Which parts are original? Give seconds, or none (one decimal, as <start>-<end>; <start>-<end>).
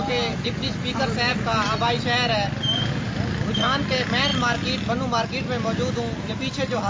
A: 0.0-6.9